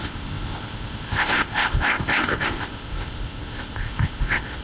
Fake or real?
fake